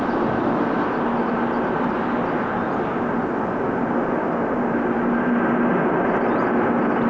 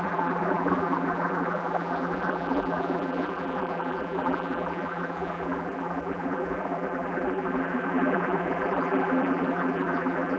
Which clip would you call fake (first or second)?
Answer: second